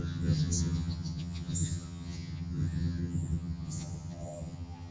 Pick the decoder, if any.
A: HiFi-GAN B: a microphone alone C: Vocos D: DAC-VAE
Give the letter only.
A